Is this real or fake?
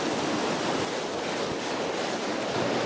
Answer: real